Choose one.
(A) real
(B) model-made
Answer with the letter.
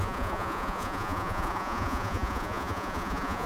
B